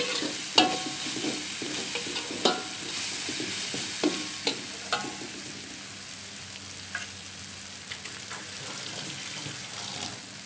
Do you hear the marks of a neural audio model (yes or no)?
no